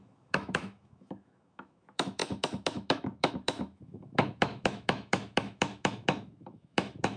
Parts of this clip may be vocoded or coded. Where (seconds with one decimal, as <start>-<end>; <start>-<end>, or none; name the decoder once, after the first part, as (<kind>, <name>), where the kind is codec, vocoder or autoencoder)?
0.0-7.2 (autoencoder, DAC-VAE)